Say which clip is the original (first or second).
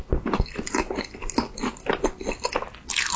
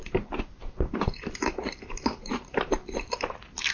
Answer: first